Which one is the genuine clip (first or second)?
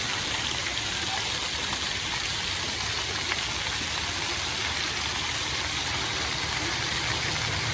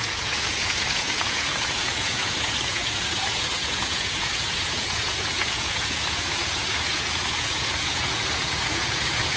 first